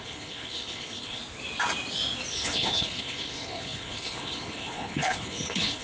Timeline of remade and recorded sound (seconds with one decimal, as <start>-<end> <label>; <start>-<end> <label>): 0.0-1.2 remade; 1.2-2.3 recorded; 2.3-5.8 remade